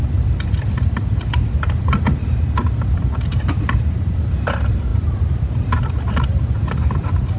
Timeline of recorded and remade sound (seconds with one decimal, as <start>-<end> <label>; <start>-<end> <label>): 0.0-7.4 recorded